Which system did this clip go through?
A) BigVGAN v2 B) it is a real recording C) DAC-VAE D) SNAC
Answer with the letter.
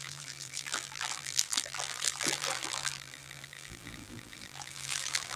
A